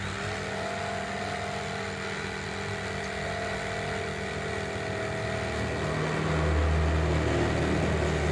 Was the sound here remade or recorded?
recorded